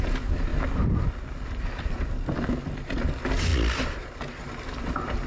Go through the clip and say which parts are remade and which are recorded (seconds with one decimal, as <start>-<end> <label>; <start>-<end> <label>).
0.0-5.3 recorded